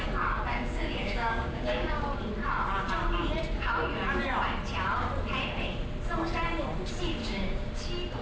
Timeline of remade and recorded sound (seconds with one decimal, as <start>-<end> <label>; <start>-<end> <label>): 0.0-0.5 recorded; 0.5-2.1 remade; 2.1-7.2 recorded; 7.2-7.7 remade; 7.7-8.2 recorded